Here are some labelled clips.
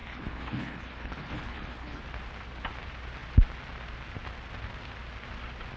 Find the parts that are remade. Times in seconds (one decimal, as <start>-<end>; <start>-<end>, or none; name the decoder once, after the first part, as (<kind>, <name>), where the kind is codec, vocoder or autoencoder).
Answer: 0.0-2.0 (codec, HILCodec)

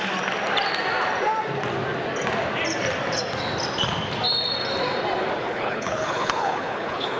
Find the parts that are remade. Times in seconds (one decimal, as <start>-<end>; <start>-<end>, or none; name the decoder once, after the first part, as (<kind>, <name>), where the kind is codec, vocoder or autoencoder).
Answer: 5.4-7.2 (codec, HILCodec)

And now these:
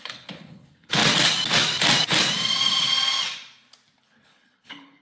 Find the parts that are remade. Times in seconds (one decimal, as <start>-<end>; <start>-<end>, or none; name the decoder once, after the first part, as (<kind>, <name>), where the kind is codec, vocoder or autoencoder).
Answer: 0.0-1.0 (codec, HILCodec); 4.0-5.0